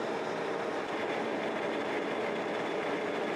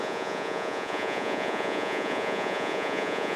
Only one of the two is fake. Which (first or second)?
second